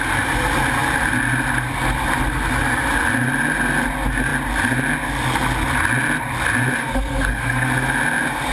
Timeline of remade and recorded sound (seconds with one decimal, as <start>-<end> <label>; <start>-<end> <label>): 0.0-6.8 recorded; 6.8-7.7 remade; 7.7-8.5 recorded